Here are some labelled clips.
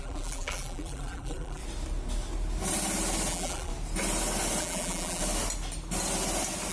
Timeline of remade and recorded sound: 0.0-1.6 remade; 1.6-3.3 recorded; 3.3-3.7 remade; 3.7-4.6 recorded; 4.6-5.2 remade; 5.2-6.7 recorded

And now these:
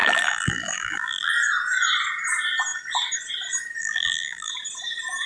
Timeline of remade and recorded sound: 0.0-1.3 remade; 1.3-3.8 recorded; 3.8-4.5 remade; 4.5-5.3 recorded

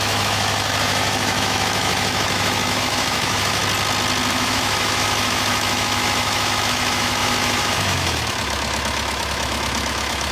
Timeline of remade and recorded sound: 0.0-3.6 remade; 3.6-4.3 recorded; 4.3-10.3 remade

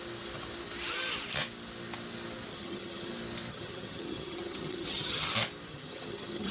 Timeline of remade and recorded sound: 0.0-2.5 recorded; 2.5-3.1 remade; 3.1-3.5 recorded; 3.5-5.3 remade; 5.3-5.7 recorded; 5.7-6.5 remade

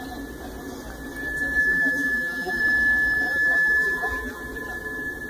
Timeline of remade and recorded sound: 0.0-1.6 recorded; 1.6-2.6 remade; 2.6-3.3 recorded; 3.3-4.4 remade; 4.4-5.3 recorded

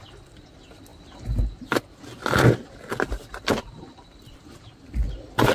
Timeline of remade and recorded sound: 0.0-5.5 recorded

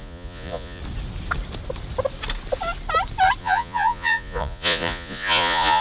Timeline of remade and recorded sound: 0.0-0.8 remade; 0.8-3.4 recorded; 3.4-5.8 remade

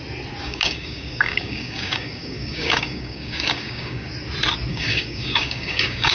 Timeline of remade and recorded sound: 0.0-0.4 recorded; 0.4-4.1 remade; 4.1-4.7 recorded; 4.7-6.1 remade